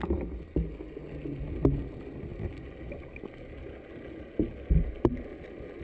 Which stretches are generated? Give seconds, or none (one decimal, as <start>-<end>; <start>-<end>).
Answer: none